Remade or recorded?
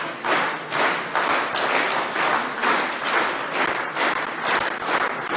remade